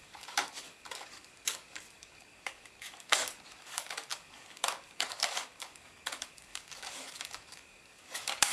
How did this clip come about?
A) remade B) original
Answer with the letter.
A